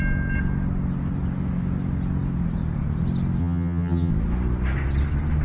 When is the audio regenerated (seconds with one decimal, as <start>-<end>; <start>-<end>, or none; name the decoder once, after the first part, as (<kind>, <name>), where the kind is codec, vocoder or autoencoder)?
3.4-4.1 (vocoder, HiFi-GAN)